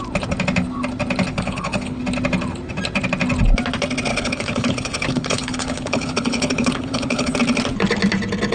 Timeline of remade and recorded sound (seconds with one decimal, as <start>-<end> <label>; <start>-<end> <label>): 0.0-1.3 recorded; 1.3-2.0 remade; 2.0-4.1 recorded; 4.1-7.4 remade; 7.4-8.5 recorded